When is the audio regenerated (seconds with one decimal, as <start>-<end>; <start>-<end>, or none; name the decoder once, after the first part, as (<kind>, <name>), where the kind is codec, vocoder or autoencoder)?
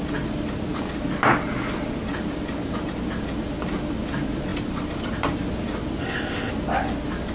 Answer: 6.0-6.5 (codec, ZipCodec)